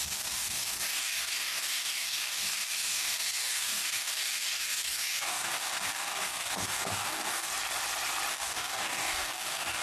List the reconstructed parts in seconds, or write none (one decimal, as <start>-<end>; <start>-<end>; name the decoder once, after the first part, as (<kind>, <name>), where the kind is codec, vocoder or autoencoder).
0.0-7.5 (codec, DAC); 8.3-9.8